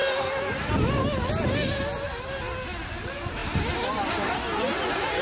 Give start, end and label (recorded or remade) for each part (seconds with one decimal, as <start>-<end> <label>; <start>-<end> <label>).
0.0-5.2 recorded